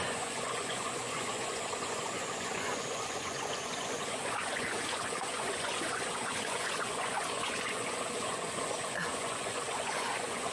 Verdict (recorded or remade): remade